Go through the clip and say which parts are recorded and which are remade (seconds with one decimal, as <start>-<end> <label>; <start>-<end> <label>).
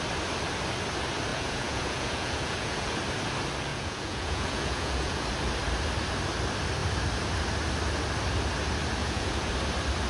0.0-1.3 recorded; 1.3-3.0 remade; 3.0-3.7 recorded; 3.7-5.2 remade; 5.2-9.0 recorded; 9.0-9.5 remade; 9.5-10.1 recorded